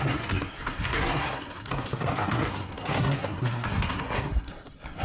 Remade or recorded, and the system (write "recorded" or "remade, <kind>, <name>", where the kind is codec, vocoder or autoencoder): remade, codec, SNAC